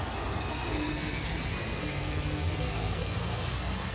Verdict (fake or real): fake